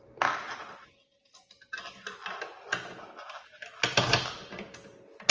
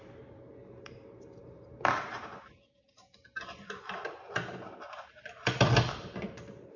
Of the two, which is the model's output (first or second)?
second